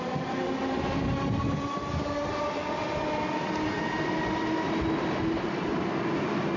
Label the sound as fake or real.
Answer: real